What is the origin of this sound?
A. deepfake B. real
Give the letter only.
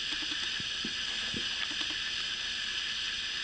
B